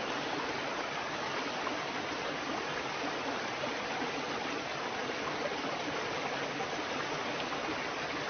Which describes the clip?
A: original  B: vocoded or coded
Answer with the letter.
A